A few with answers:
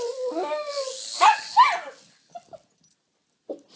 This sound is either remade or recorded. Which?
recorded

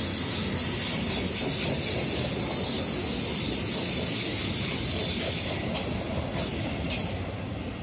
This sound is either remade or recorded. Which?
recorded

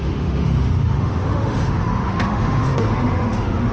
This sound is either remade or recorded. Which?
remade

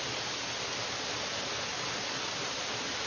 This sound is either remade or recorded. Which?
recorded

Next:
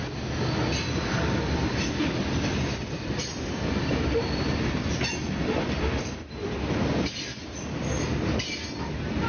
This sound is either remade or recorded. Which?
recorded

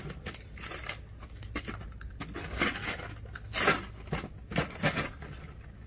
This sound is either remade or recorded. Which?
recorded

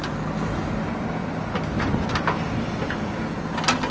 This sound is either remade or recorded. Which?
recorded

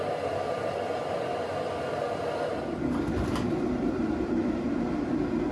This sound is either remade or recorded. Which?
remade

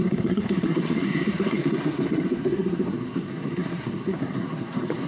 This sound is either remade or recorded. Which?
remade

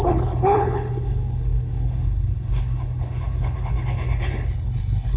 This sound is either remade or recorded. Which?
remade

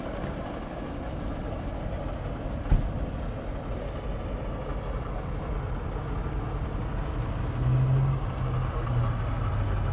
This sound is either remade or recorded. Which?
recorded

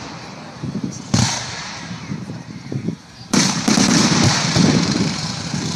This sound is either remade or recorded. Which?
remade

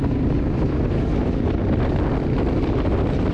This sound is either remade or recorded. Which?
recorded